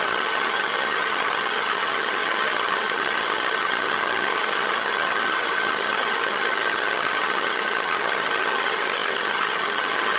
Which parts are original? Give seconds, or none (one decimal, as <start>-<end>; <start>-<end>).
none